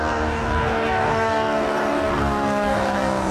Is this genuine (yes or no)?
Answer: no